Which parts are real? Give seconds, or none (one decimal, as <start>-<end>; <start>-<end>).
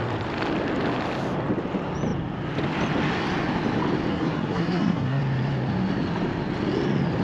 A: 0.0-4.1; 5.2-7.2